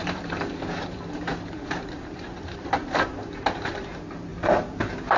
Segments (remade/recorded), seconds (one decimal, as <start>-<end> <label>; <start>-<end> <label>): 0.0-5.2 remade